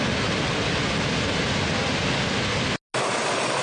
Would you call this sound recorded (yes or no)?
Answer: yes